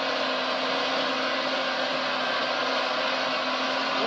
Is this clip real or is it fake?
real